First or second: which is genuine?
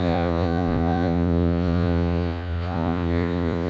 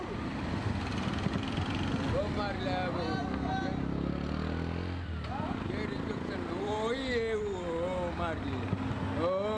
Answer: second